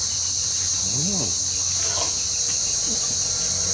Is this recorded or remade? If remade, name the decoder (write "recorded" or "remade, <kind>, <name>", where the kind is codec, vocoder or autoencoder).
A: recorded